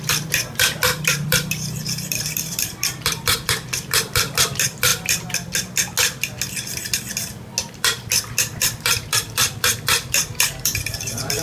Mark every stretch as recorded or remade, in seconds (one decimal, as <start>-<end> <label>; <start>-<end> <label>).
0.0-4.9 remade; 4.9-7.7 recorded; 7.7-11.4 remade